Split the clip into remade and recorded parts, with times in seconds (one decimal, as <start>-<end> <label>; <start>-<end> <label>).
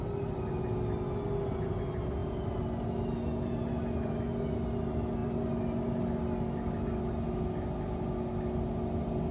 0.0-9.3 recorded